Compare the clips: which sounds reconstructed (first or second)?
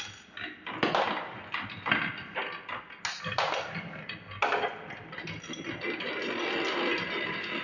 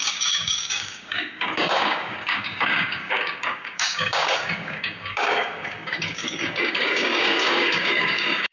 second